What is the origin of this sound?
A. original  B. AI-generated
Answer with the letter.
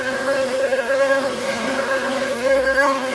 B